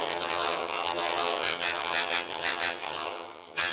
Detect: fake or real fake